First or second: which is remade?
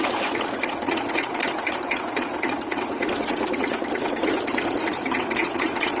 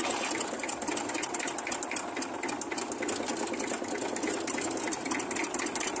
first